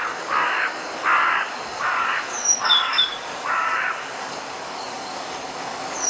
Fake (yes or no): yes